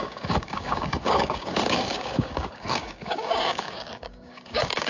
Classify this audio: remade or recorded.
remade